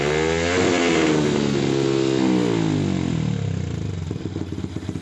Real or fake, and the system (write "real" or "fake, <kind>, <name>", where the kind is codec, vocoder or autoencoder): real